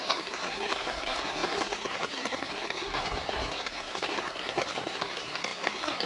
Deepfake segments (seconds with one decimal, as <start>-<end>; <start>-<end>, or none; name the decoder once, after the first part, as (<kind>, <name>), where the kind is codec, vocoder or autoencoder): 0.0-6.1 (codec, SNAC)